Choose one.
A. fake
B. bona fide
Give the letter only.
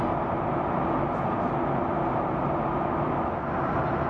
B